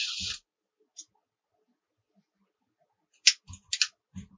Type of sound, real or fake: real